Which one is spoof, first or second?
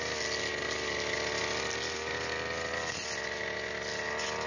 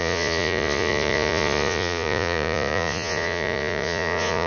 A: second